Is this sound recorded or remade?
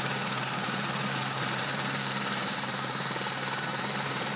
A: remade